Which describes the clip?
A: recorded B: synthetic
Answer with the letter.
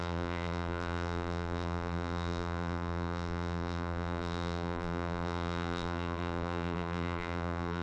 B